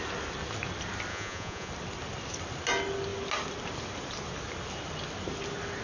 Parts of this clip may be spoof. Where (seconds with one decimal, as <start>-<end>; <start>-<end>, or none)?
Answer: 1.1-1.7